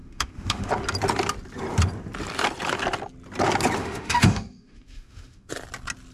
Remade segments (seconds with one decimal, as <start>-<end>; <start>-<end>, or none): 0.0-0.7; 3.8-5.5